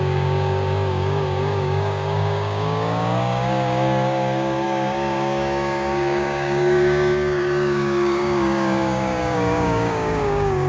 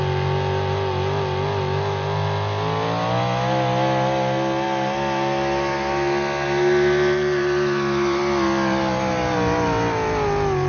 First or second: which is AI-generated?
first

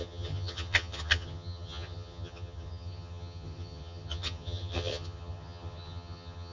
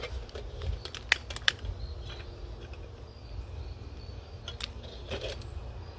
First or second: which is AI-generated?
first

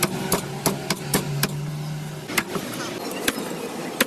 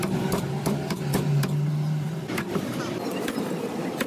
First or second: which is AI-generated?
second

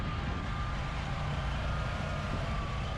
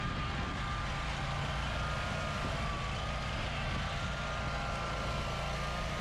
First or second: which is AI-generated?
first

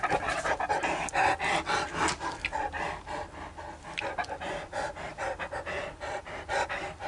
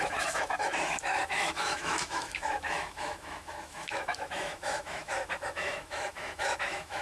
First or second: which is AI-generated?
second